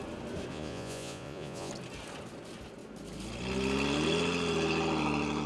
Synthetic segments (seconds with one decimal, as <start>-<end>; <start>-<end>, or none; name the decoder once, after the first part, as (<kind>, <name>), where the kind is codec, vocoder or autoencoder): 0.5-1.7 (vocoder, Vocos)